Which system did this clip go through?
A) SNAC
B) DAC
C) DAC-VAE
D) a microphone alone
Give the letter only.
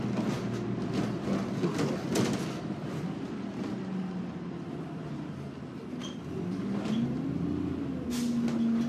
D